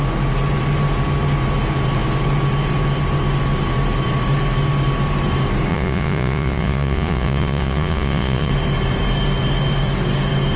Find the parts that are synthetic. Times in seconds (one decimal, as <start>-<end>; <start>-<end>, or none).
5.7-8.5